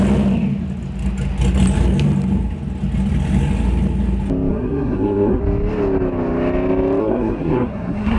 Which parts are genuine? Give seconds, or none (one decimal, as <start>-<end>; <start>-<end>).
0.0-4.5; 5.4-7.0